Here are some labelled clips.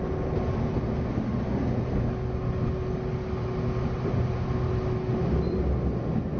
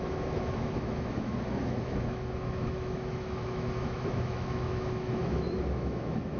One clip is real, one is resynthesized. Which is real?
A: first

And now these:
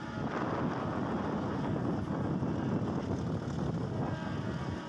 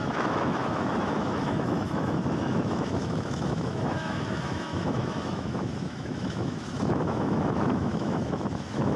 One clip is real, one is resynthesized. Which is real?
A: first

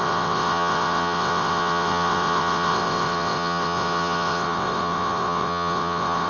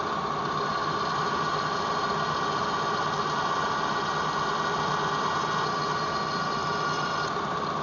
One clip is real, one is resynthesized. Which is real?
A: second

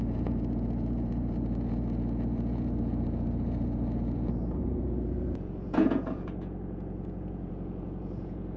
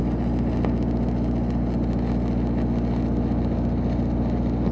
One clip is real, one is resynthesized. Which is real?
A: second